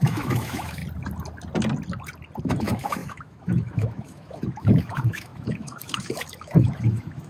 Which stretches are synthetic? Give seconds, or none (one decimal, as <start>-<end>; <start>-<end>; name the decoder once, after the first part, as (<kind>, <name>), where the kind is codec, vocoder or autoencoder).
0.0-0.8 (autoencoder, DAC-VAE); 2.4-7.3